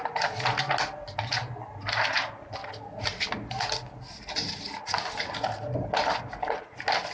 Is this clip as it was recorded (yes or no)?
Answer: yes